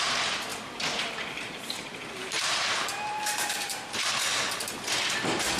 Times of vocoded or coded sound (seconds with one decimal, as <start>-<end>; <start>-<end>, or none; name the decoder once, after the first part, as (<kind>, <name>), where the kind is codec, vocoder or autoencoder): 0.5-3.9 (vocoder, BigVGAN v2)